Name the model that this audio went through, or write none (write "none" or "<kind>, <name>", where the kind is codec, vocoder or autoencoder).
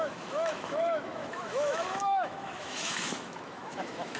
autoencoder, DAC-VAE